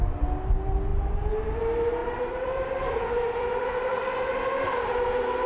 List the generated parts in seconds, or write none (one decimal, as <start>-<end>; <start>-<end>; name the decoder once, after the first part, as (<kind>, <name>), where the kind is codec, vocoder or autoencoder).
2.0-4.1 (vocoder, BigVGAN v2)